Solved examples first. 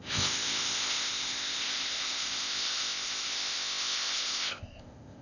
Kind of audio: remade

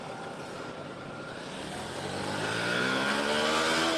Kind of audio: recorded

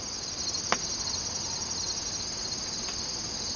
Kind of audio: recorded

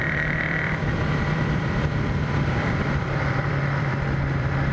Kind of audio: remade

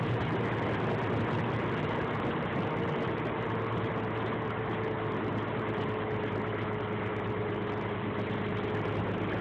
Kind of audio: recorded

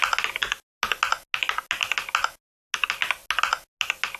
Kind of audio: recorded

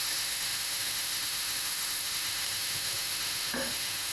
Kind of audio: remade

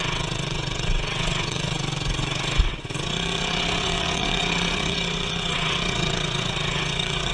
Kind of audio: remade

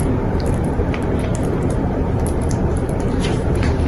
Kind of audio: remade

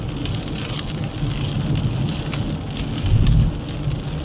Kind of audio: recorded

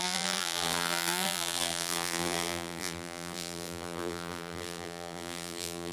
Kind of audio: remade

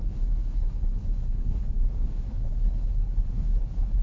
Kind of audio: remade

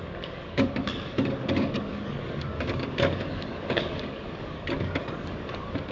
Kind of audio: remade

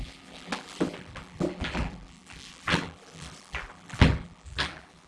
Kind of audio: remade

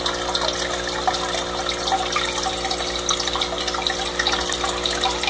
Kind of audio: recorded